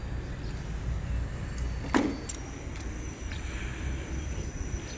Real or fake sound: real